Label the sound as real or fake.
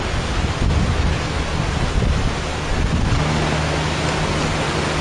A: real